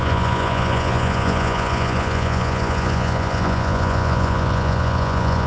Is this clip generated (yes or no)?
yes